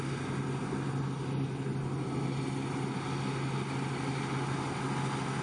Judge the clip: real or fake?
real